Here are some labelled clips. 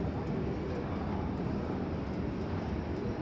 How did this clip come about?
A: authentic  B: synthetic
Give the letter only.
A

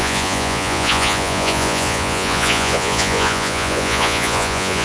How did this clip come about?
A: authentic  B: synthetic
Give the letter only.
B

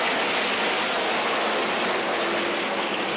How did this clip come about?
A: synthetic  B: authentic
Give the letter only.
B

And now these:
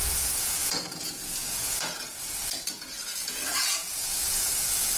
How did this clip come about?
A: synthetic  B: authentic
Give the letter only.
A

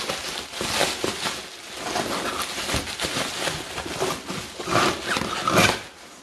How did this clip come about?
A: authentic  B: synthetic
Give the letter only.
A